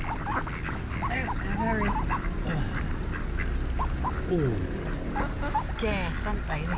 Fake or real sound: real